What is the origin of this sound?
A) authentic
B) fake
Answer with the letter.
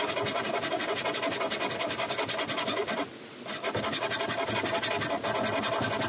A